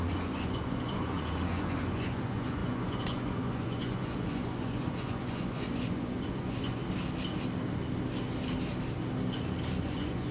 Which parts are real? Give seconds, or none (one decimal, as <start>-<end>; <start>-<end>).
6.8-9.8